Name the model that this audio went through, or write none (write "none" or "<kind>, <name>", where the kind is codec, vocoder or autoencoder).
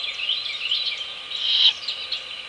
none